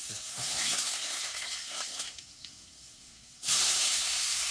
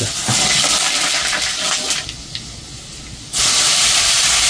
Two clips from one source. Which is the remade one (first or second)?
first